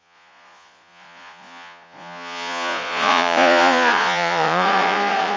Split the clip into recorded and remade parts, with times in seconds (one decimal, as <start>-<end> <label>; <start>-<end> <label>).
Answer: 0.0-5.4 remade